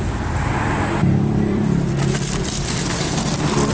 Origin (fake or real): fake